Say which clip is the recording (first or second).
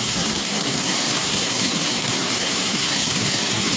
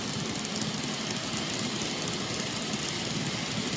second